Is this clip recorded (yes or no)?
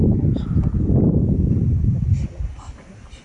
yes